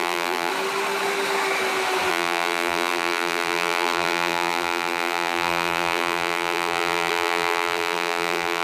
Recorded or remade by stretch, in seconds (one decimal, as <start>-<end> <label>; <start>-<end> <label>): 0.0-0.5 remade; 0.5-2.1 recorded; 2.1-8.6 remade